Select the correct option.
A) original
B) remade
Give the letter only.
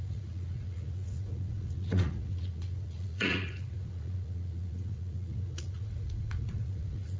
B